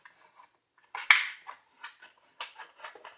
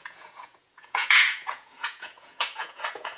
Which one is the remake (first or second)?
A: second